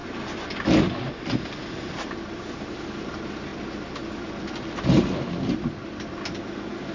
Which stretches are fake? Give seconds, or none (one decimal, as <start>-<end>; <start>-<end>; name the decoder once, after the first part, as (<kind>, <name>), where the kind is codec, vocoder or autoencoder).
none